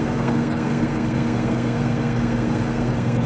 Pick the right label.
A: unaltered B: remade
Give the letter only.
B